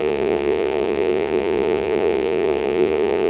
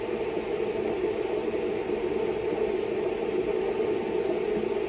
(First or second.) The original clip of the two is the second